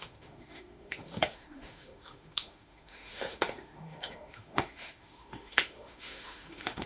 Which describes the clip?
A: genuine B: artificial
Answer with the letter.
B